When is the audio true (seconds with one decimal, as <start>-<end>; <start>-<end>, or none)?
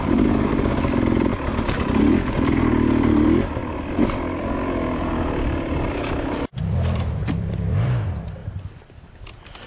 1.3-2.0; 3.6-5.9